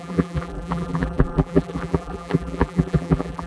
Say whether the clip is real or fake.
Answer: fake